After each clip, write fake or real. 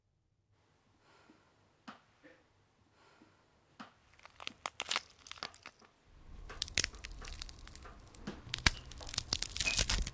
real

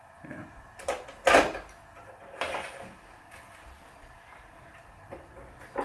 real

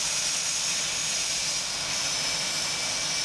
real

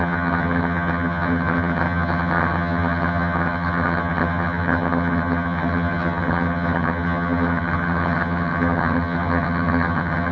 fake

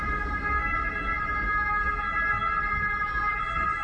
real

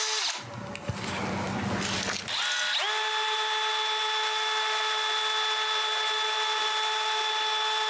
real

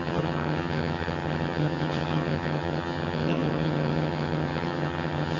fake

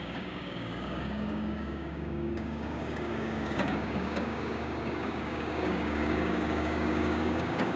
fake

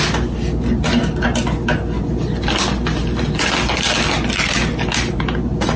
real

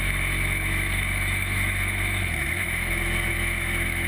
fake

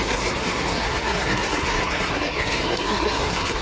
fake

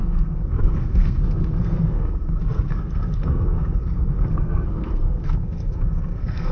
fake